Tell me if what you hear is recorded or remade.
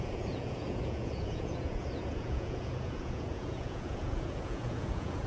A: remade